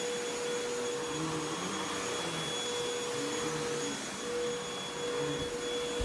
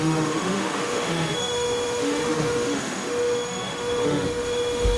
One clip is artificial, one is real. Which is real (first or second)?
first